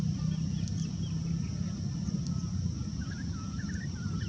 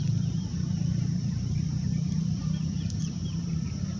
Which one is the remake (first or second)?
second